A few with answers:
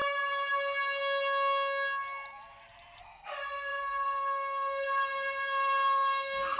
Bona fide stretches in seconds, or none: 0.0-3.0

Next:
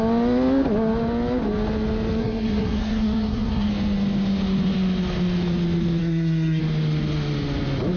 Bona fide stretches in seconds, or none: 0.0-2.2; 3.7-6.0; 6.6-8.0

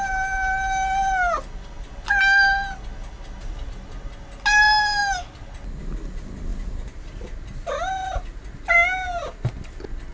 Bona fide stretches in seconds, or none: 0.0-10.1

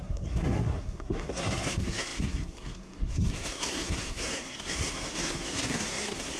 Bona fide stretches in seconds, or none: none

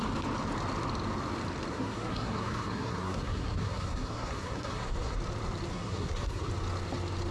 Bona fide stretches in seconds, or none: 0.0-1.7; 5.2-5.7; 6.5-7.3